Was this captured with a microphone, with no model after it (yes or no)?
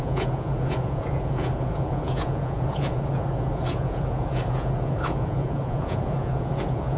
no